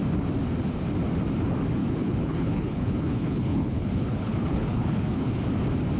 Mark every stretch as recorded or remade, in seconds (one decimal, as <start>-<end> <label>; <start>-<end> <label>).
0.0-1.8 recorded; 1.8-5.4 remade; 5.4-6.0 recorded